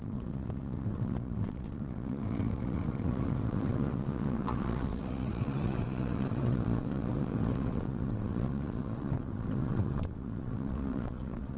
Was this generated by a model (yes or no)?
yes